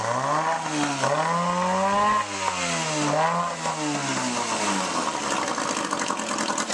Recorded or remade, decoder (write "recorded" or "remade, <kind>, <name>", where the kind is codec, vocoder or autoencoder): recorded